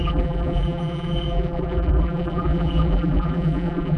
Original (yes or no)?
no